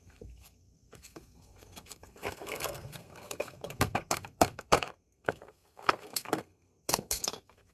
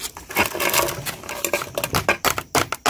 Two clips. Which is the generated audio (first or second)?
first